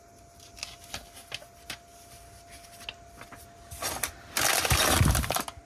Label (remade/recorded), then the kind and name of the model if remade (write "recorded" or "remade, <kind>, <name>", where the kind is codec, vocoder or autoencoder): recorded